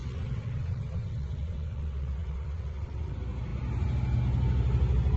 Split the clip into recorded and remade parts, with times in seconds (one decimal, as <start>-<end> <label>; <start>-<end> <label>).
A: 0.0-3.1 remade; 3.1-5.2 recorded